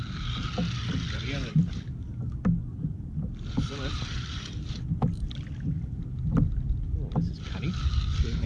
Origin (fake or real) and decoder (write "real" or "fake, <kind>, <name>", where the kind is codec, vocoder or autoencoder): real